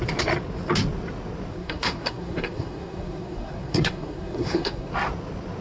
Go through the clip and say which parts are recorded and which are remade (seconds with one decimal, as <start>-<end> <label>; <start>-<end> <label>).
0.0-1.5 recorded; 1.5-4.9 remade; 4.9-5.6 recorded